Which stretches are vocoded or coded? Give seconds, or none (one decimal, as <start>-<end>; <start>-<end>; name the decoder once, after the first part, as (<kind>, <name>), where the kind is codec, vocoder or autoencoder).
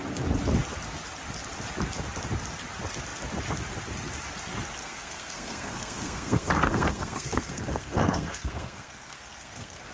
4.8-9.9 (codec, SNAC)